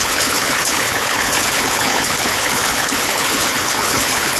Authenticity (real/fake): fake